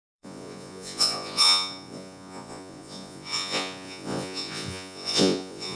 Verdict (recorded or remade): remade